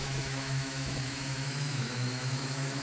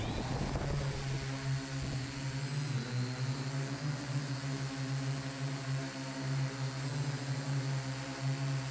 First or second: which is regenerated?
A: first